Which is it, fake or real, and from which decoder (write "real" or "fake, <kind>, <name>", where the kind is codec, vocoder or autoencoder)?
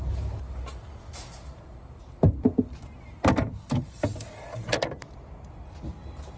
real